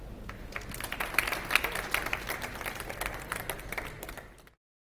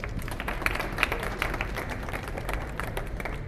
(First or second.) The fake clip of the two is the second